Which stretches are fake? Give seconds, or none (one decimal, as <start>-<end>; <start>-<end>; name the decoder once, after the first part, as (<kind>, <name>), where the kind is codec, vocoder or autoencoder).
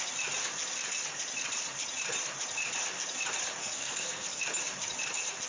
3.6-4.4 (codec, SNAC)